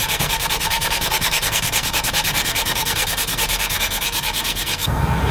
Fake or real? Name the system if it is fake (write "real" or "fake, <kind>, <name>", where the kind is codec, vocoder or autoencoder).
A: fake, codec, SNAC